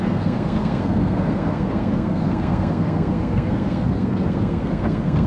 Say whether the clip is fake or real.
fake